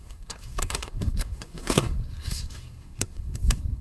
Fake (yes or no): yes